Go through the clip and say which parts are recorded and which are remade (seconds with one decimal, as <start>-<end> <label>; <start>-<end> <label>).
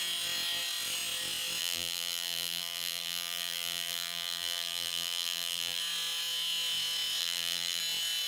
0.0-1.6 recorded; 1.6-5.8 remade; 5.8-7.2 recorded; 7.2-7.8 remade; 7.8-8.3 recorded